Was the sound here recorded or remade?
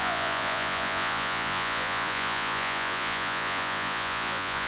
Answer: remade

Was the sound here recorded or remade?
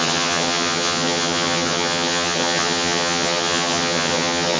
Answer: remade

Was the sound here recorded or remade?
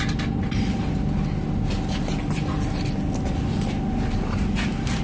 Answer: recorded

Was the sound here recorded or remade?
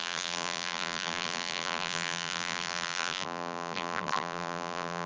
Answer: remade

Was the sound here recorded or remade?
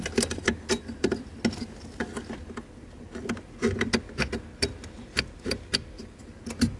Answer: recorded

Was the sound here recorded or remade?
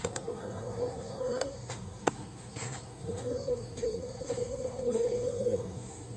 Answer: remade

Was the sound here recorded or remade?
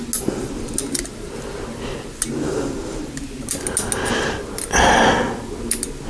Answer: recorded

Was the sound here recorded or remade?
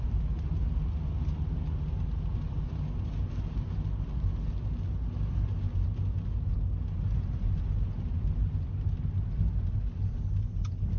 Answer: recorded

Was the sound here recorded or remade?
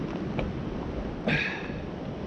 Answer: recorded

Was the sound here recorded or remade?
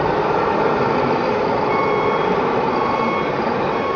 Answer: recorded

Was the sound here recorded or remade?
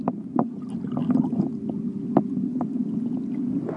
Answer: recorded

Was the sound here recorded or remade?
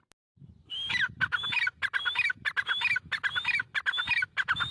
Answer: recorded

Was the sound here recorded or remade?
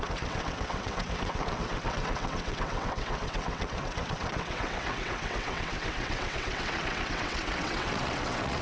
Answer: remade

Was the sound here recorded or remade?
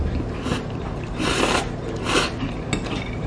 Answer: recorded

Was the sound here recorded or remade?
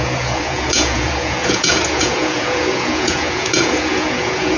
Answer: remade